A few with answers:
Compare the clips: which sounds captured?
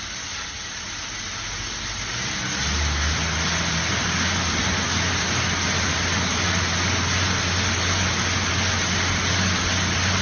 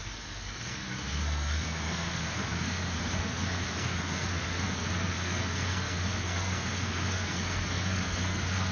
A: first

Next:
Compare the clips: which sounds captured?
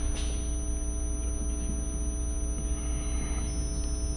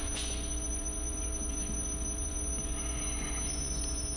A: first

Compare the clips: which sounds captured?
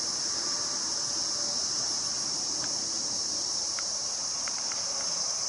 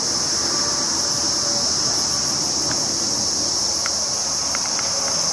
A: second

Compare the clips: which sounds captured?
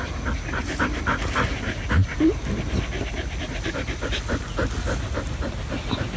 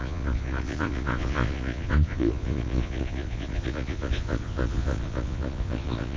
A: first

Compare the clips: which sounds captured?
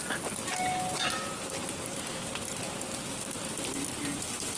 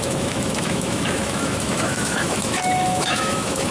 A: first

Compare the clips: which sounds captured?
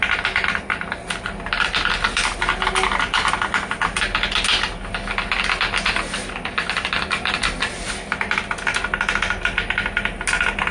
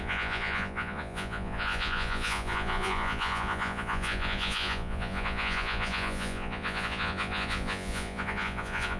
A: first